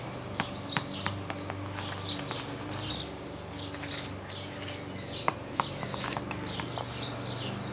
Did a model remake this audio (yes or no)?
no